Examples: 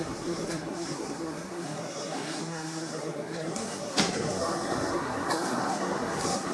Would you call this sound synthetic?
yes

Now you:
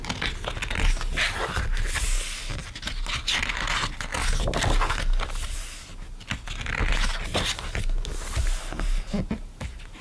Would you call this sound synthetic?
no